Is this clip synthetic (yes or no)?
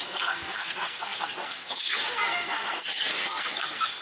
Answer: yes